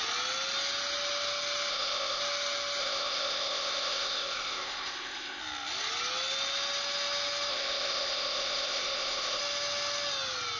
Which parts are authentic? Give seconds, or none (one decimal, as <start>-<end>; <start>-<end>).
0.0-1.7; 2.2-2.8; 5.4-7.5; 9.4-10.6

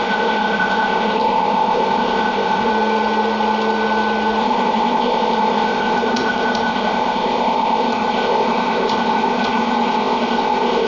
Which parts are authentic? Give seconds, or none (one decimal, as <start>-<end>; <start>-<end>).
2.7-4.4

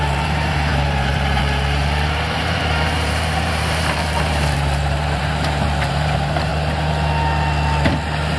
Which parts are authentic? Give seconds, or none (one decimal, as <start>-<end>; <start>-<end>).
6.5-8.4

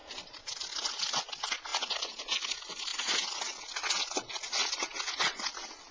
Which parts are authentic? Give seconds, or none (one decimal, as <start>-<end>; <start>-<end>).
none